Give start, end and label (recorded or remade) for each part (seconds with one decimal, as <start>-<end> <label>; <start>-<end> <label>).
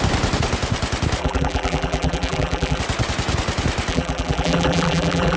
0.0-1.2 recorded; 1.2-2.8 remade; 2.8-3.9 recorded; 3.9-5.4 remade